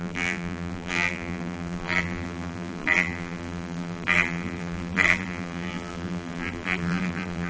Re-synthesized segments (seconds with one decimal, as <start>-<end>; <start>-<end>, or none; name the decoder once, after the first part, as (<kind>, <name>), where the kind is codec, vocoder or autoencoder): 0.0-7.5 (vocoder, BigVGAN v2)